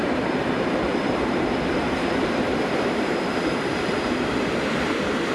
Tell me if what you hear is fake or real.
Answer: fake